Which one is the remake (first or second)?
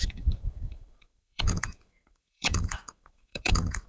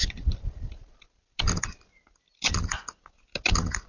first